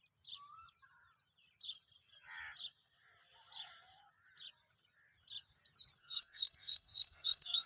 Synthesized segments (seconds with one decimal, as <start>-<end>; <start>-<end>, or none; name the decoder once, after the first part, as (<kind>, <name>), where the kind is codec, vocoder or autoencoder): 6.0-7.7 (codec, SNAC)